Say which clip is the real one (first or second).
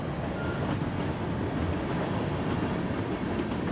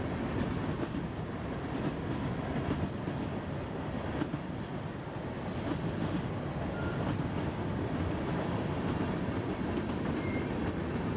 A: first